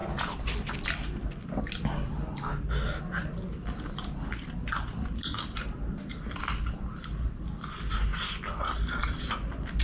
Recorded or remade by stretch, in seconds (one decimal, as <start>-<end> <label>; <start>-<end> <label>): 0.0-9.8 recorded